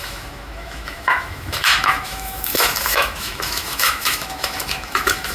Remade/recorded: remade